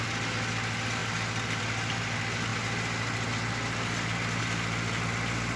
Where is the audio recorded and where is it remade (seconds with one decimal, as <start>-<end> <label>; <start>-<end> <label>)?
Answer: 0.0-5.6 recorded